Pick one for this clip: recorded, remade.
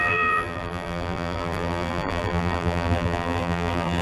remade